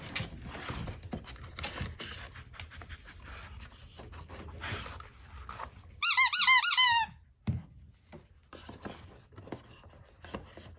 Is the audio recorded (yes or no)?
yes